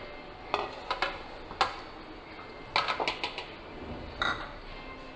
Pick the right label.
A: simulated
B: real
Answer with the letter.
B